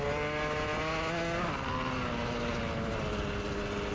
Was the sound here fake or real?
real